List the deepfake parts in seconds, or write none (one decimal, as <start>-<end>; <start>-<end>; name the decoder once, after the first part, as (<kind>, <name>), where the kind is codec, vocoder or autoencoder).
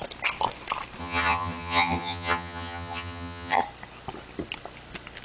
1.0-3.6 (vocoder, HiFi-GAN)